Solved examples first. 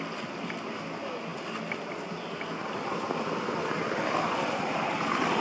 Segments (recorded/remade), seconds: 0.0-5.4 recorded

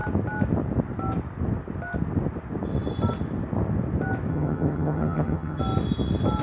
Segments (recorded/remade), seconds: 0.0-4.3 recorded; 4.3-5.6 remade; 5.6-6.4 recorded

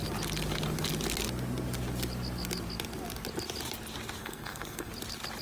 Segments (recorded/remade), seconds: 0.0-4.2 recorded; 4.2-4.9 remade; 4.9-5.4 recorded

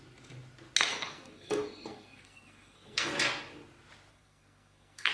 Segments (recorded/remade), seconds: 0.0-0.9 recorded; 0.9-3.1 remade; 3.1-4.1 recorded; 4.1-5.1 remade

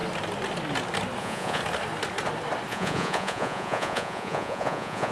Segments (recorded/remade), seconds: 0.0-1.2 recorded; 1.2-1.6 remade; 1.6-2.7 recorded; 2.7-5.1 remade

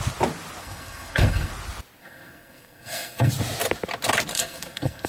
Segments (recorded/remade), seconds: 0.0-0.6 recorded; 0.6-1.5 remade; 1.5-2.0 recorded; 2.0-3.3 remade; 3.3-4.3 recorded; 4.3-5.1 remade

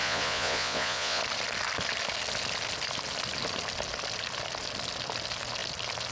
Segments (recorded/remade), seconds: 0.0-1.2 remade; 1.2-6.1 recorded

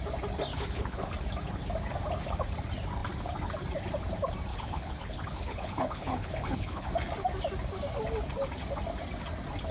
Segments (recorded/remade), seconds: 0.0-0.5 recorded; 0.5-1.1 remade; 1.1-4.5 recorded; 4.5-6.9 remade; 6.9-9.7 recorded